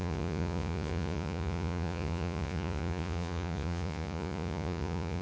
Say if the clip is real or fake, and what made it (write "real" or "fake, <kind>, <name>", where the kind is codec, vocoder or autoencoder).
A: fake, vocoder, Vocos